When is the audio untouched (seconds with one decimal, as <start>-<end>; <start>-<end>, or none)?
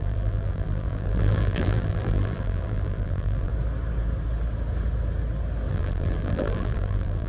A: 3.5-5.7